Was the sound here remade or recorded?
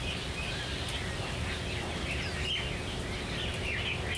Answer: recorded